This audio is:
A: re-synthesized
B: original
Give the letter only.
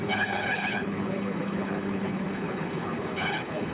A